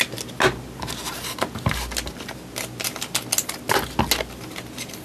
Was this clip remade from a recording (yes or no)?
no